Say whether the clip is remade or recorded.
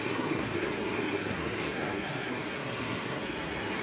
remade